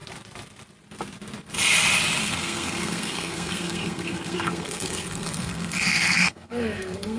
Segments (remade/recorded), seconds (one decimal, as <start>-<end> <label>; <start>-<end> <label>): 0.0-2.2 recorded; 2.2-7.2 remade